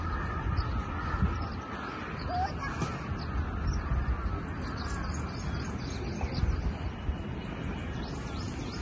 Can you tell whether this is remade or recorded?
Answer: recorded